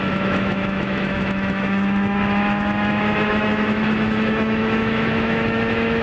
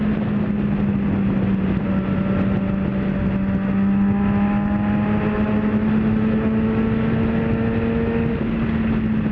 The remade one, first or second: first